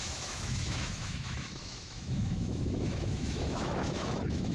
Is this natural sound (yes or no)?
no